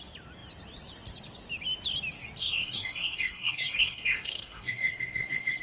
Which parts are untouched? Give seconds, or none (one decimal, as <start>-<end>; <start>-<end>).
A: 0.0-2.4